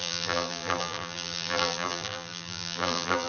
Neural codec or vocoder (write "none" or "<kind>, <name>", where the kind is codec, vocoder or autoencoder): vocoder, BigVGAN v2